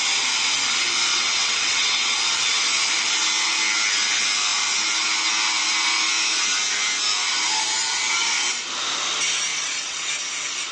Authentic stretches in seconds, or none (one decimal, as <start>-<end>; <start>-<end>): 0.0-1.1; 2.2-9.5; 10.1-10.7